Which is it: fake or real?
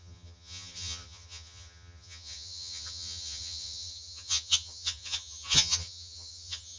fake